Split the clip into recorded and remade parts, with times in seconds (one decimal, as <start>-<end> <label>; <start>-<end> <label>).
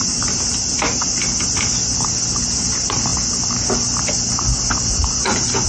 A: 0.0-5.7 recorded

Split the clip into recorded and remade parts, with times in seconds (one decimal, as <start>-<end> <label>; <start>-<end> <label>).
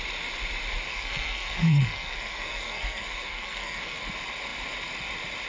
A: 0.0-0.9 recorded; 0.9-4.0 remade; 4.0-5.5 recorded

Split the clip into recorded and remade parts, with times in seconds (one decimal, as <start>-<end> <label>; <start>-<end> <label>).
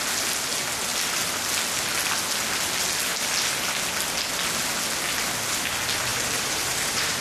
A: 0.0-6.1 recorded; 6.1-7.2 remade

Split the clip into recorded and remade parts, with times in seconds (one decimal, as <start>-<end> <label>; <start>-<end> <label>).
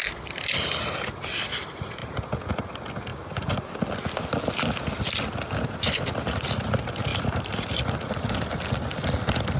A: 0.0-3.1 recorded; 3.1-3.8 remade; 3.8-7.1 recorded; 7.1-7.8 remade; 7.8-9.6 recorded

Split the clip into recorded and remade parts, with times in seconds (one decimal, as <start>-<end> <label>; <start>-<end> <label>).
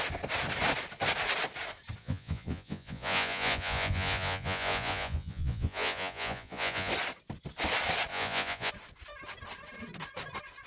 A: 0.0-2.0 recorded; 2.0-6.9 remade; 6.9-8.1 recorded; 8.1-8.7 remade; 8.7-10.7 recorded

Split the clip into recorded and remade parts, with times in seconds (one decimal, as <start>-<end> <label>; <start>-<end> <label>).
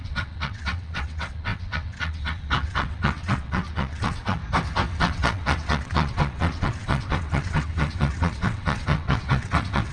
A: 0.0-4.4 remade; 4.4-5.0 recorded; 5.0-9.9 remade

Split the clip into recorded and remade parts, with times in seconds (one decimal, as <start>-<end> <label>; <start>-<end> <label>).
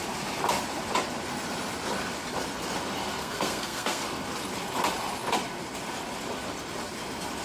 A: 0.0-3.2 recorded; 3.2-4.0 remade; 4.0-7.4 recorded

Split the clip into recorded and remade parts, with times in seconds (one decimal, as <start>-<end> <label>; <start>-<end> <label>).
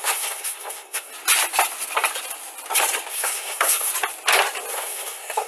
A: 0.0-1.1 remade; 1.1-3.1 recorded; 3.1-3.9 remade; 3.9-4.7 recorded; 4.7-5.5 remade